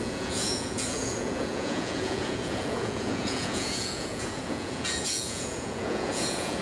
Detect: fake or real fake